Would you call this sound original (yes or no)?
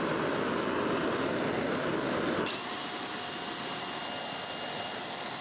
yes